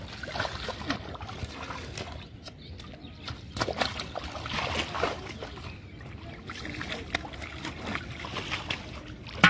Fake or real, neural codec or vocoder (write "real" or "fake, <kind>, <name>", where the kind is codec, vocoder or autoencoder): real